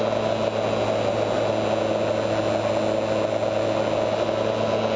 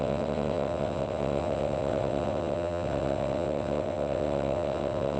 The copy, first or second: second